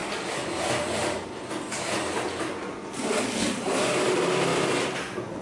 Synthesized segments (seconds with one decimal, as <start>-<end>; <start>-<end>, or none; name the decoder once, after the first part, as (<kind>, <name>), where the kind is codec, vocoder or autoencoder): 4.5-5.4 (vocoder, BigVGAN v2)

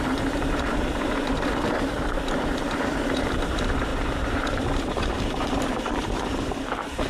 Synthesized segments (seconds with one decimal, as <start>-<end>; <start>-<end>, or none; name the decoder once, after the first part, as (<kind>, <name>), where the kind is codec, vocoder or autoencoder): 0.0-7.1 (vocoder, BigVGAN v2)

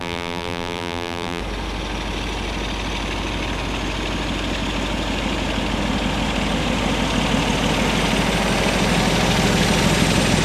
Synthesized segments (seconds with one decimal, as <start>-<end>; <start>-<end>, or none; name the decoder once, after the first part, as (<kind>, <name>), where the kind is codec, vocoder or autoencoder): 0.0-1.4 (vocoder, BigVGAN v2)

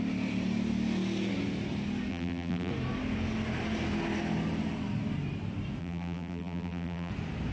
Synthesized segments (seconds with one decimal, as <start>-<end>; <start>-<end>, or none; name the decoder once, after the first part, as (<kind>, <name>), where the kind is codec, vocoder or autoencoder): 2.1-2.7 (vocoder, BigVGAN v2); 5.8-7.1

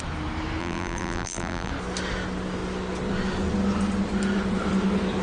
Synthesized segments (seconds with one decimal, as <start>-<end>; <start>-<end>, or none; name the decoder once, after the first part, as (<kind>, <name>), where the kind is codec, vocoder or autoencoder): 0.6-1.7 (vocoder, BigVGAN v2)

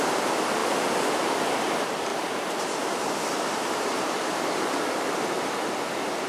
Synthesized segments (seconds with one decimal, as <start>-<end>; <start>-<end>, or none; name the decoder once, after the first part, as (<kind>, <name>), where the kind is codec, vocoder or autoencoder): 2.1-4.7 (vocoder, BigVGAN v2)

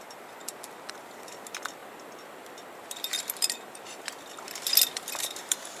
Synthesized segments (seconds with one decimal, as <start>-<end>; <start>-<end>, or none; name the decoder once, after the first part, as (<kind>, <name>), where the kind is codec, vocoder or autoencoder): 0.0-0.4 (vocoder, BigVGAN v2); 0.9-5.8